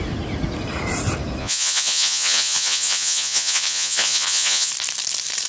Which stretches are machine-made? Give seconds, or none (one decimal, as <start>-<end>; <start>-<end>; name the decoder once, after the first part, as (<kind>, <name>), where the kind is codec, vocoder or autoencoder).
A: 1.4-4.7 (vocoder, Vocos)